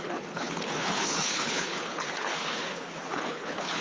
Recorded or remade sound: remade